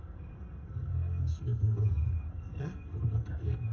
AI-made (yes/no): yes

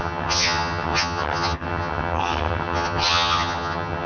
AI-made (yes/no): yes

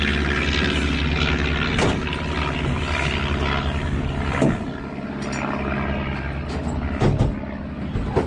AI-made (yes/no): no